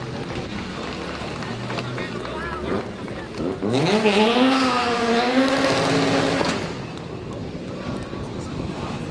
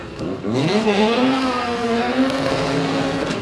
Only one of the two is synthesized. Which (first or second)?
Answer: second